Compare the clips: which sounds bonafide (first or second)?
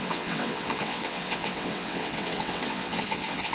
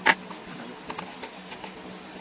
second